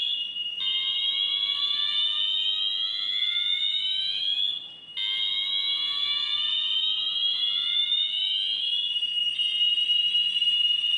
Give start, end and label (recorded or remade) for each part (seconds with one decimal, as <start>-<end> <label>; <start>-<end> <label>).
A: 0.0-11.0 recorded